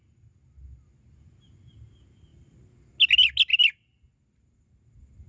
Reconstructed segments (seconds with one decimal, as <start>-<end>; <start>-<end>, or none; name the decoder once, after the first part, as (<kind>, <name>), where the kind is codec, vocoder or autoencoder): none